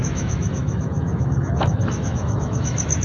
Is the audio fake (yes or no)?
yes